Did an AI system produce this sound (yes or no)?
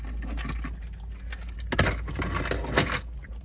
no